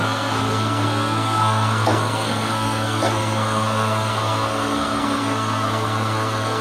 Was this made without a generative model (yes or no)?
no